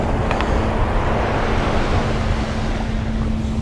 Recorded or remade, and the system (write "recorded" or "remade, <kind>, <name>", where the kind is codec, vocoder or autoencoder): recorded